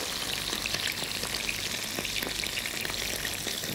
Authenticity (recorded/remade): recorded